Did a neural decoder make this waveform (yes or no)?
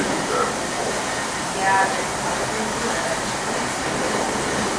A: no